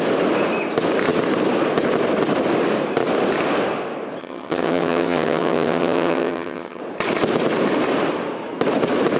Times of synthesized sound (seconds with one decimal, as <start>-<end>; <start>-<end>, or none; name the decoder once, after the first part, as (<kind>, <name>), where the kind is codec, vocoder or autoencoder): 4.2-6.8 (vocoder, HiFi-GAN)